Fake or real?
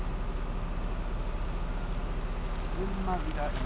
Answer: real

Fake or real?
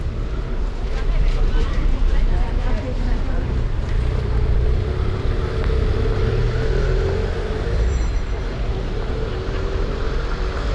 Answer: fake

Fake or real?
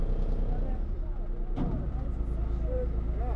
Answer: real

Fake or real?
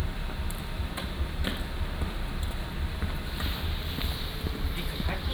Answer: real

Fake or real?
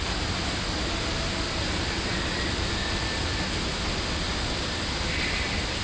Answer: real